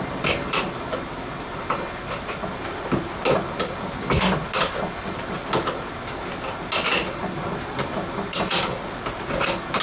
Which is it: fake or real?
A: real